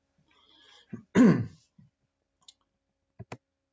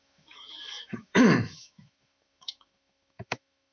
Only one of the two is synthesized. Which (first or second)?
second